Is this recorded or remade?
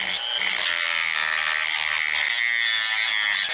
recorded